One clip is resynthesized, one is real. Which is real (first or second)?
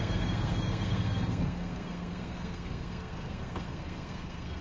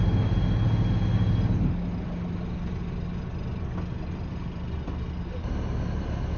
second